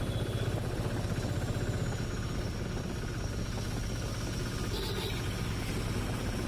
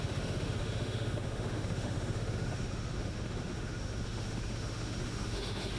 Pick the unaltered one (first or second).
first